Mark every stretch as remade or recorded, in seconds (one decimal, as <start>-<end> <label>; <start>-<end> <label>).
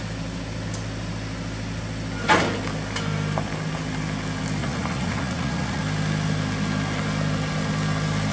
0.0-4.6 recorded; 4.6-5.8 remade; 5.8-8.3 recorded